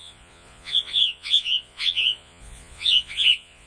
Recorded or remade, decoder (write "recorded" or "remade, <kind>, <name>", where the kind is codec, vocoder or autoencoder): remade, vocoder, Vocos